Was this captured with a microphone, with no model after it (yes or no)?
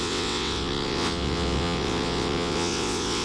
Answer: no